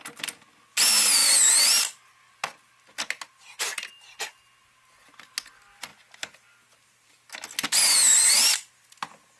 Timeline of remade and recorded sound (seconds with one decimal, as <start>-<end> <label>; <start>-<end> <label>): 0.0-9.4 recorded